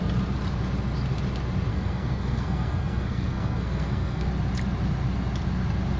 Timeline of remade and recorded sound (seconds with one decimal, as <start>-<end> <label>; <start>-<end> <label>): 0.0-1.7 recorded; 1.7-4.3 remade; 4.3-6.0 recorded